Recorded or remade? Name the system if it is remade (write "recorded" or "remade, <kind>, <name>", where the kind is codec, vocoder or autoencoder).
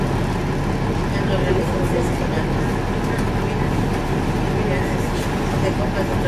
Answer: recorded